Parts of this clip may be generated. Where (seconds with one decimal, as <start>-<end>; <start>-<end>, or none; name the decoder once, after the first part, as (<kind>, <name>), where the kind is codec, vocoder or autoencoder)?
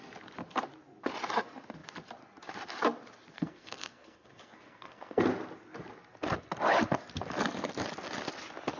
3.3-5.2 (codec, SNAC)